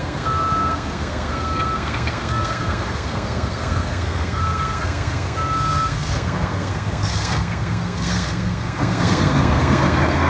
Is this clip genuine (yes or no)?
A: no